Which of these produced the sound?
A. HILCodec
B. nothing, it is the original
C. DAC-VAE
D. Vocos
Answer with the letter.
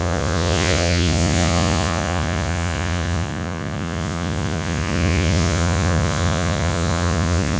D